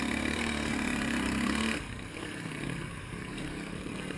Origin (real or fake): fake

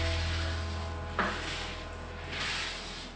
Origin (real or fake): real